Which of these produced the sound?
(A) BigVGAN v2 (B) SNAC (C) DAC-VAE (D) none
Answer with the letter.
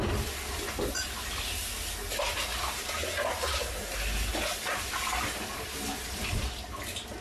D